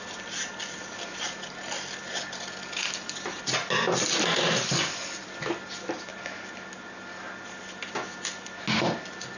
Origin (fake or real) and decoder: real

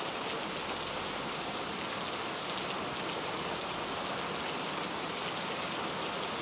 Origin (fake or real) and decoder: real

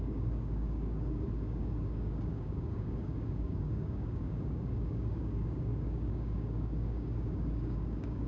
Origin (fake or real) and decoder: fake, codec, DAC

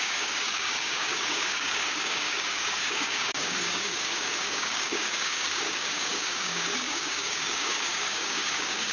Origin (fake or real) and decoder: fake, codec, DAC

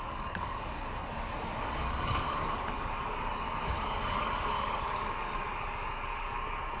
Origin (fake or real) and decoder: fake, codec, DAC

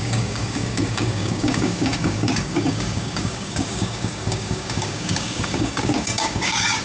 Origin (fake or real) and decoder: fake, codec, DAC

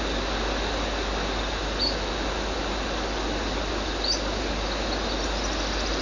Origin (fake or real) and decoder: real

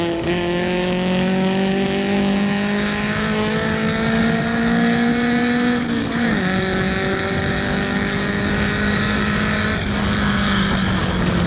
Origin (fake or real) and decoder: fake, codec, DAC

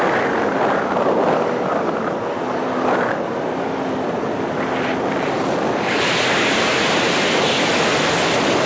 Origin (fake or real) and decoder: real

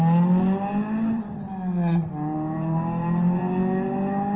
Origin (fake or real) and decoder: real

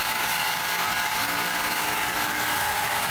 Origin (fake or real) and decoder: fake, codec, DAC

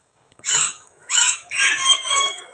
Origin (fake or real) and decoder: fake, codec, DAC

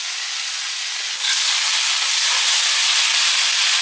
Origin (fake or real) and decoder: real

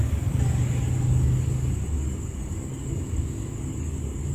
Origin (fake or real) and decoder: fake, codec, DAC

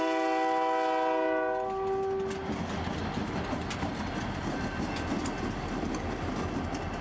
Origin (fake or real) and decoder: real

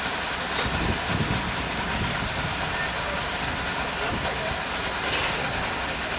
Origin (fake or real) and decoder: real